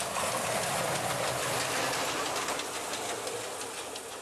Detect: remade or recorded recorded